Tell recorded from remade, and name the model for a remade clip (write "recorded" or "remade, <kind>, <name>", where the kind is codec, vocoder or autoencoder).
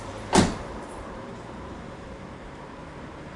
remade, vocoder, BigVGAN v2